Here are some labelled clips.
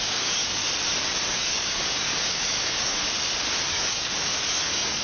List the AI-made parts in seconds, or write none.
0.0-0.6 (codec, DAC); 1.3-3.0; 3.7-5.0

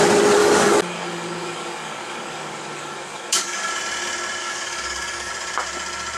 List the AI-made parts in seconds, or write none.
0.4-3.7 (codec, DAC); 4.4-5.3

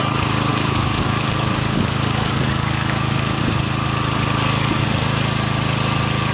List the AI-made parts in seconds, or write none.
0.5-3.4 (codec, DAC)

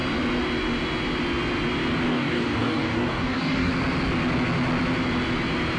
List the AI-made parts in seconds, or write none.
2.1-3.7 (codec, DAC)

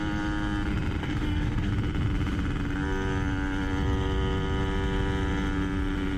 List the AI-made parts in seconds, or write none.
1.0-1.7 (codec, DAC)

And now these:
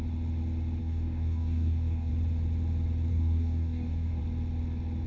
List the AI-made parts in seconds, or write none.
0.8-2.1 (codec, DAC); 3.1-4.2

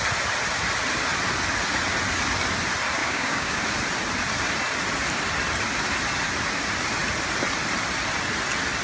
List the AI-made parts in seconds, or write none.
3.0-3.6 (codec, DAC)

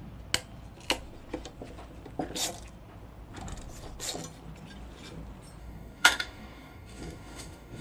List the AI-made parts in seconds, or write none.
5.6-7.8 (codec, DAC)